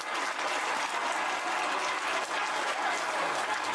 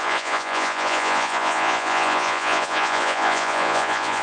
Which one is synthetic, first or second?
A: second